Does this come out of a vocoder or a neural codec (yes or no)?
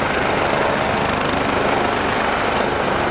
no